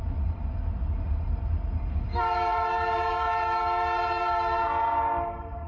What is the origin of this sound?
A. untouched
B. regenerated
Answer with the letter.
B